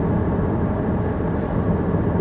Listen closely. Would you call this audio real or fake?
real